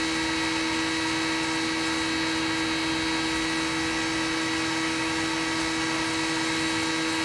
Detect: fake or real real